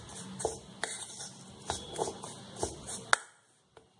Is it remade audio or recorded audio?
recorded